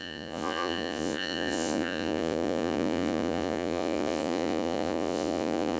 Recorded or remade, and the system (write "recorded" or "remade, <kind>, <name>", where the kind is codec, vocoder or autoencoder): remade, vocoder, Vocos